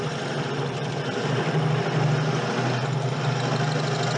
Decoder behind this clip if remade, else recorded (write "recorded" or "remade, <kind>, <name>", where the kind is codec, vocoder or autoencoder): recorded